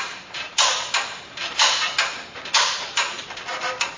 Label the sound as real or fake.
fake